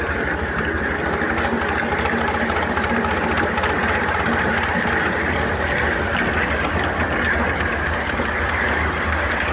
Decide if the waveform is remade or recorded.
recorded